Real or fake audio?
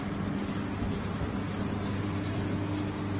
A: real